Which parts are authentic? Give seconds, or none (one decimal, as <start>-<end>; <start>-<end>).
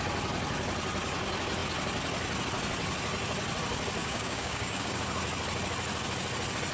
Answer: 0.0-4.0; 5.0-6.7